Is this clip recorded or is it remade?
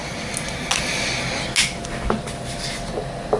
recorded